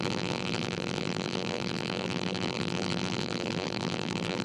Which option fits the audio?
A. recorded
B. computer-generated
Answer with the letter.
B